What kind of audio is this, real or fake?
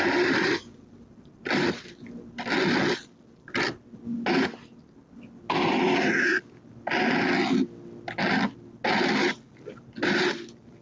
real